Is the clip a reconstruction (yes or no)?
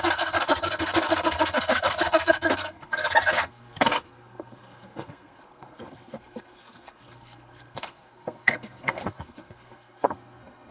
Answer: yes